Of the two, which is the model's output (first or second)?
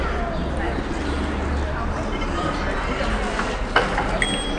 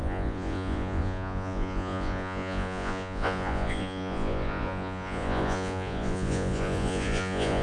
second